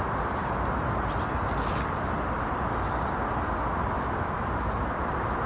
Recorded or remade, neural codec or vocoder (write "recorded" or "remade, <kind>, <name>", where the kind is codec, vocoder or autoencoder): recorded